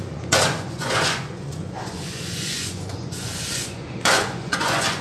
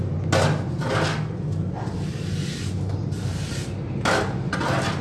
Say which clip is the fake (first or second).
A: first